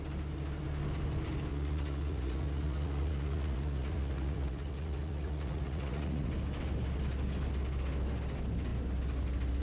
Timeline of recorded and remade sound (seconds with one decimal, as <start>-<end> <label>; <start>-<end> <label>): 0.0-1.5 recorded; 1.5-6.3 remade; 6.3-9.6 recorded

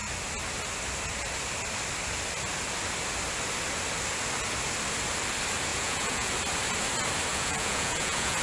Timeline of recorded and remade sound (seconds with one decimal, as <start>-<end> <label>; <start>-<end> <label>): 0.0-5.7 recorded; 5.7-6.3 remade; 6.3-7.3 recorded; 7.3-8.4 remade

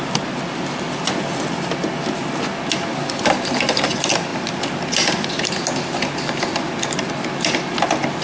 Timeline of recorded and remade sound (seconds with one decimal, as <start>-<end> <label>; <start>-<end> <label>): 0.0-8.2 recorded

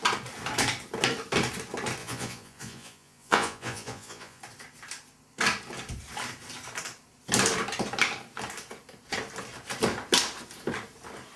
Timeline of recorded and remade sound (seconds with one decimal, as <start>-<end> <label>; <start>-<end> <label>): 0.0-2.0 recorded; 2.0-4.4 remade; 4.4-11.4 recorded

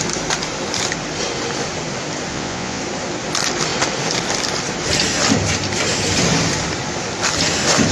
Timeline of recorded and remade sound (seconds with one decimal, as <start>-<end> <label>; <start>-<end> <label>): 0.0-2.3 recorded; 2.3-2.8 remade; 2.8-7.9 recorded

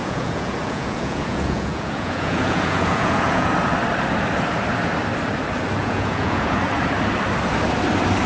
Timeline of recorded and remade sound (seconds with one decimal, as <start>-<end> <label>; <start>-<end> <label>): 0.0-3.5 remade; 3.5-5.8 recorded; 5.8-6.6 remade; 6.6-8.3 recorded

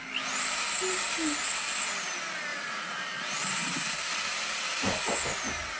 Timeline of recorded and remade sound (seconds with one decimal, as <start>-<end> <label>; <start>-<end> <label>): 0.0-2.5 recorded; 2.5-3.0 remade; 3.0-5.8 recorded